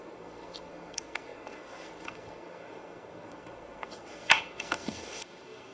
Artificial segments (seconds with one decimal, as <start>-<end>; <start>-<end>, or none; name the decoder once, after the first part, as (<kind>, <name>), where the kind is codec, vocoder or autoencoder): 0.0-5.7 (codec, SNAC)